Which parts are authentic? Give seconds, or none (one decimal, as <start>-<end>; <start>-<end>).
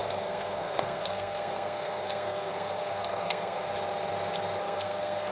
3.7-4.6